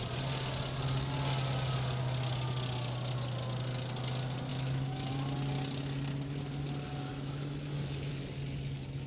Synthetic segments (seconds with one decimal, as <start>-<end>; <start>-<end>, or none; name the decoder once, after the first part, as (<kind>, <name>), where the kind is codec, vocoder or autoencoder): 4.5-5.1 (autoencoder, DAC-VAE); 7.1-8.1